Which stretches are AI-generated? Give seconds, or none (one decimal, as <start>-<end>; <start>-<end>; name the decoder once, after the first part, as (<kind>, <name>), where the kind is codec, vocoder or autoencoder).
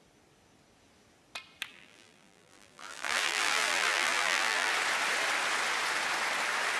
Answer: 1.7-4.7 (vocoder, BigVGAN v2)